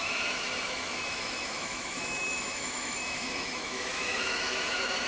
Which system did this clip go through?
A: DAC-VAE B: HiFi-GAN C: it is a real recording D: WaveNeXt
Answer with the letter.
A